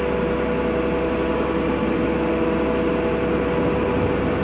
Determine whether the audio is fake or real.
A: real